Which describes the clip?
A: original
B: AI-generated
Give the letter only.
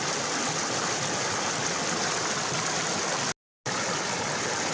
A